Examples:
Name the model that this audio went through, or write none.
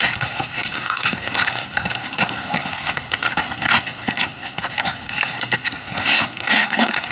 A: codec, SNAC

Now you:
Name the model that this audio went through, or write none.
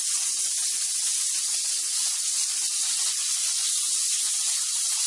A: none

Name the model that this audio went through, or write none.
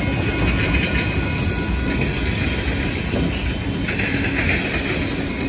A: none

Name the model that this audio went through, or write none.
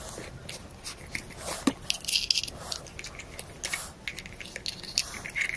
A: none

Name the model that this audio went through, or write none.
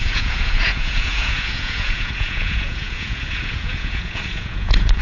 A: vocoder, Vocos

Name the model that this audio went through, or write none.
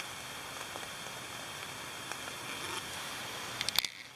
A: none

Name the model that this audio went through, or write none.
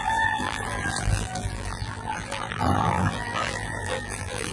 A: vocoder, BigVGAN v2